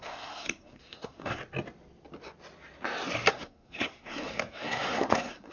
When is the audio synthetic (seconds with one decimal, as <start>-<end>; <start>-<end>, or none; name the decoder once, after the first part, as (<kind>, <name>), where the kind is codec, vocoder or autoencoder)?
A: 0.0-1.4 (codec, SNAC); 3.3-5.5